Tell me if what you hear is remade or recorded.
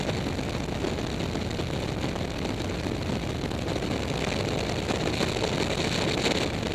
recorded